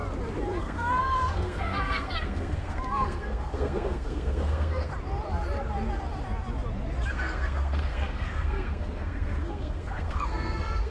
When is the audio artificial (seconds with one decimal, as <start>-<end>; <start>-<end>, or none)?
0.6-4.9; 7.1-10.9